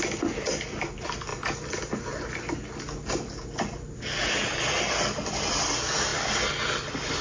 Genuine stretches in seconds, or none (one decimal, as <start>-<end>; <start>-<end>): 0.0-7.2